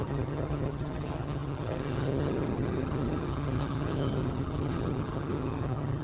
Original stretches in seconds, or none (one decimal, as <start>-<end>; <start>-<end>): none